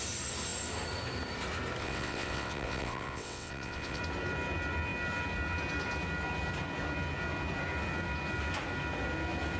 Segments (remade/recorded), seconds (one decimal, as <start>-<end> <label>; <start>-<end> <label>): 0.0-1.8 recorded; 1.8-4.0 remade; 4.0-9.6 recorded